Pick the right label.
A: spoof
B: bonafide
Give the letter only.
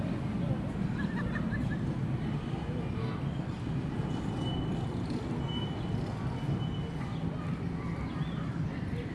B